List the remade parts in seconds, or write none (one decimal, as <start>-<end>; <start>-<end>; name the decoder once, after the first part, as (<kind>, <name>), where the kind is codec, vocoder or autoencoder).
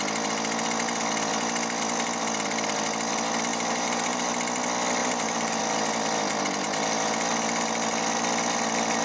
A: 3.5-4.3 (vocoder, BigVGAN v2); 5.0-5.6